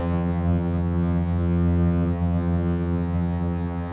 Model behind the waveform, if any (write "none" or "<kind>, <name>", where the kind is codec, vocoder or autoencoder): vocoder, HiFi-GAN